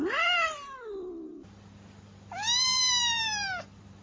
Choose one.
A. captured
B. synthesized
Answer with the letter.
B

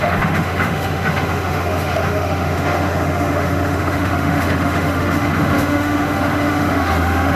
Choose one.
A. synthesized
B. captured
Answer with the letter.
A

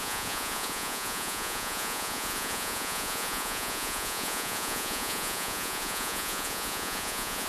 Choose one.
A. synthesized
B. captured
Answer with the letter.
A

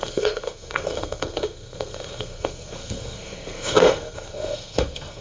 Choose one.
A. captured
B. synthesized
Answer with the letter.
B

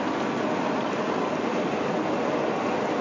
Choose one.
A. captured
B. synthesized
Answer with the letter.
A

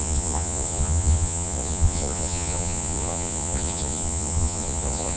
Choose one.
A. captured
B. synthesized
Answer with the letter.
B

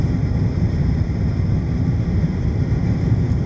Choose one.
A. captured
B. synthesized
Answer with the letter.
A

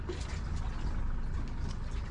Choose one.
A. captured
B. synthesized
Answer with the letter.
A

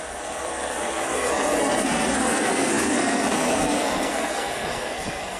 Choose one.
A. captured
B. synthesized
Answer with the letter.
B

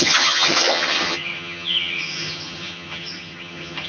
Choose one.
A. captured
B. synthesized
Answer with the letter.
B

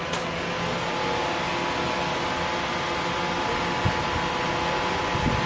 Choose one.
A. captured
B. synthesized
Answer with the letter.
A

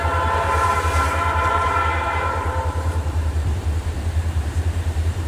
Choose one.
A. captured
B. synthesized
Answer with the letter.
B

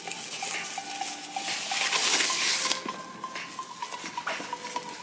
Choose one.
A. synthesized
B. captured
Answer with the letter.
B